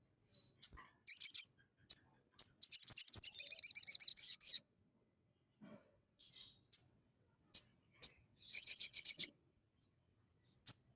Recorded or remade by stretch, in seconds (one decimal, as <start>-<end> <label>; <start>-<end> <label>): 0.0-4.1 recorded; 4.1-6.3 remade; 6.3-6.8 recorded; 6.8-10.5 remade; 10.5-11.0 recorded